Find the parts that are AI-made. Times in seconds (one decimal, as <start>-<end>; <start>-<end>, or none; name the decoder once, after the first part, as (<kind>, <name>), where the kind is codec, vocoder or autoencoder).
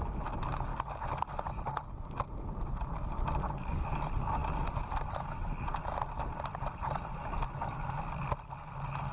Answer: 0.7-1.2 (codec, DAC); 3.4-4.0